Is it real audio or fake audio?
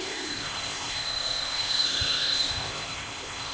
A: fake